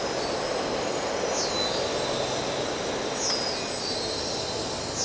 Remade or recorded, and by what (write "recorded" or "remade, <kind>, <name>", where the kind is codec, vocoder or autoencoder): recorded